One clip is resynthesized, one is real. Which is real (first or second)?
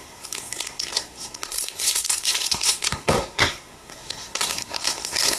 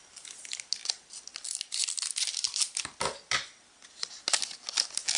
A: second